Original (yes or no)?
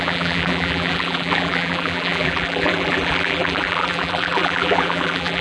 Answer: no